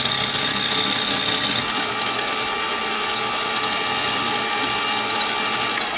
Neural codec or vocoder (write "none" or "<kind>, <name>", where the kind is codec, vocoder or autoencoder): none